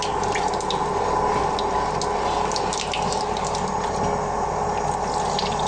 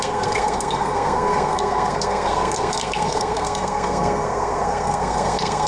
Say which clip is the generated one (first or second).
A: second